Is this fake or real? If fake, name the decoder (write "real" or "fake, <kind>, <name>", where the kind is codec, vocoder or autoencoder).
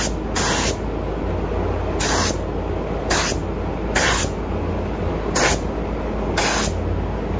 real